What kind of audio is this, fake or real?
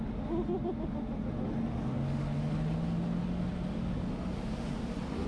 real